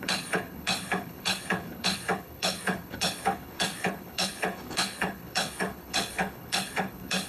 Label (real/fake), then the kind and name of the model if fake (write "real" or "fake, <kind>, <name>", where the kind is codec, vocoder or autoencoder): fake, codec, HILCodec